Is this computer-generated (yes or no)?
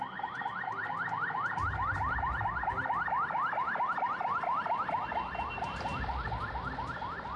no